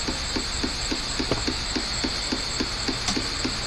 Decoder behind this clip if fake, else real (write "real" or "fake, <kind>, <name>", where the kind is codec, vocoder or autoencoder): real